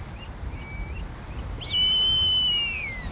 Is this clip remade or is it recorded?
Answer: recorded